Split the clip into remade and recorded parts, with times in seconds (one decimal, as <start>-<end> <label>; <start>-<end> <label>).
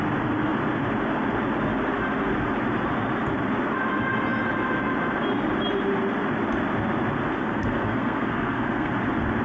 0.0-7.4 recorded; 7.4-8.9 remade; 8.9-9.4 recorded